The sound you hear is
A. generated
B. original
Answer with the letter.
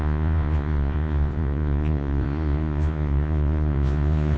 A